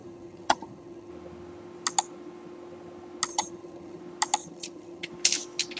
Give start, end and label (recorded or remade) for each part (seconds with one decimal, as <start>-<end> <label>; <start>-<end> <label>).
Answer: 0.0-1.1 remade; 1.1-3.3 recorded; 3.3-4.0 remade; 4.0-4.4 recorded; 4.4-5.1 remade; 5.1-5.8 recorded